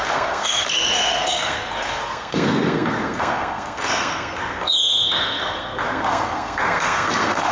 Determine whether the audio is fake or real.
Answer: fake